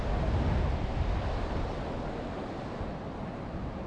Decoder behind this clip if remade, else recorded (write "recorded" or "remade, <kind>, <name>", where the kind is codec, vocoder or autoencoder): recorded